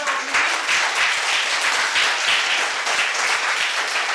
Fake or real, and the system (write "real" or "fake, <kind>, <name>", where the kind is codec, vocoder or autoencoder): real